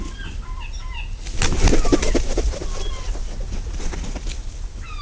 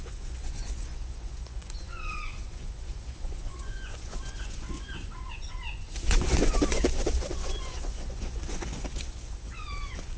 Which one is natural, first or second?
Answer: first